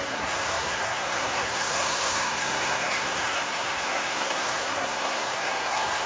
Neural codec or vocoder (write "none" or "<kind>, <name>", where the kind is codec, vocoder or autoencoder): codec, SNAC